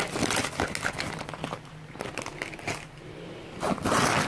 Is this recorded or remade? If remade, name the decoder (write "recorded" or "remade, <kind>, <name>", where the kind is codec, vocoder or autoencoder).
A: recorded